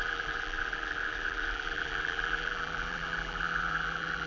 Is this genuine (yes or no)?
no